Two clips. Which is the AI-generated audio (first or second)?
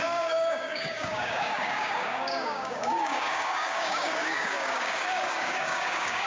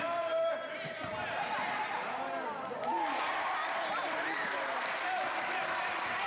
first